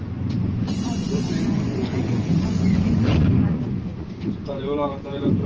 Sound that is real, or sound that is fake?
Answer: fake